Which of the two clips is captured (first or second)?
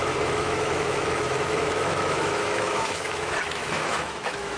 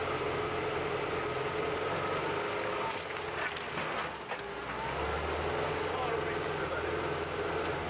second